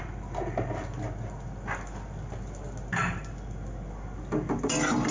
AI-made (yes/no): no